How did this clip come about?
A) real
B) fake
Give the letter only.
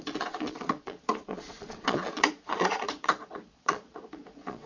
B